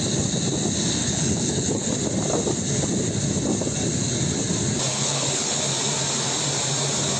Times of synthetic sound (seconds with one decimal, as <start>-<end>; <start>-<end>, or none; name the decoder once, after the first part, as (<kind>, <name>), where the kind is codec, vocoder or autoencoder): 1.0-1.9 (codec, HILCodec); 4.9-5.6